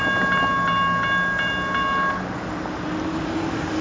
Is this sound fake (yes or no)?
no